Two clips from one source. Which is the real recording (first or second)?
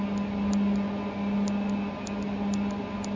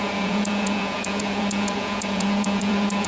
first